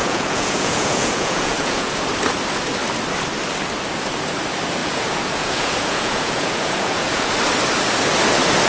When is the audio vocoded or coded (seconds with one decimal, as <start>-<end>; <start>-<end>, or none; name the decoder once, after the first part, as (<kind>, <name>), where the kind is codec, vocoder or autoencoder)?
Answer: 0.0-2.0 (vocoder, Vocos); 4.8-7.3